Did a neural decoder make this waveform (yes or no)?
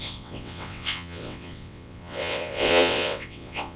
yes